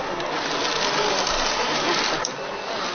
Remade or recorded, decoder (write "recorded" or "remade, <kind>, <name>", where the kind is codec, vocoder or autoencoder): recorded